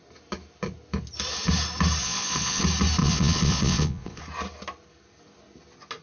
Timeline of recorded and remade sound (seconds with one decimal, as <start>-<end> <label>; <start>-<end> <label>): 0.0-2.0 recorded; 2.0-2.6 remade; 2.6-3.0 recorded; 3.0-4.2 remade; 4.2-6.0 recorded